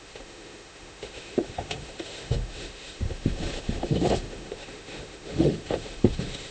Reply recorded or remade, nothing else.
remade